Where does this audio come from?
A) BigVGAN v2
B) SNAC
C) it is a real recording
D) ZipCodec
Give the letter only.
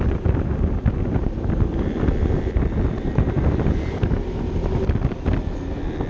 A